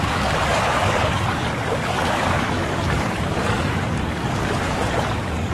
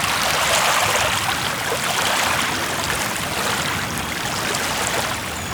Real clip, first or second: second